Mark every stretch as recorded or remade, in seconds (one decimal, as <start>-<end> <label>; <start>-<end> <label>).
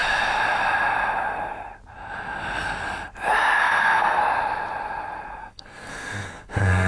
0.0-3.6 recorded; 3.6-4.2 remade; 4.2-5.4 recorded; 5.4-6.9 remade